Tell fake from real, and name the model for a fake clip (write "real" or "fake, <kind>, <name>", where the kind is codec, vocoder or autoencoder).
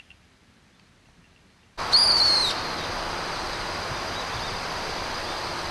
real